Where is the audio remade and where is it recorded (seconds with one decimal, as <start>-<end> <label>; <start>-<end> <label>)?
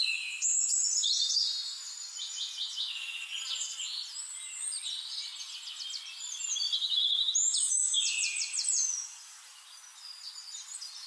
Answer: 0.0-11.1 recorded